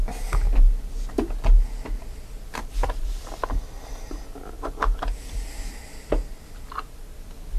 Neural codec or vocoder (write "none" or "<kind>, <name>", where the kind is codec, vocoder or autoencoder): none